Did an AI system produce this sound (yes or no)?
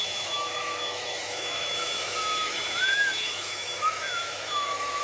yes